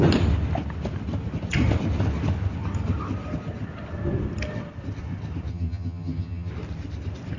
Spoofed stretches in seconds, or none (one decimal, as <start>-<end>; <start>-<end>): 5.5-6.5